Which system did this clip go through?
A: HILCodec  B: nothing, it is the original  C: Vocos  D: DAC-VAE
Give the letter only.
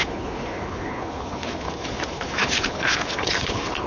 A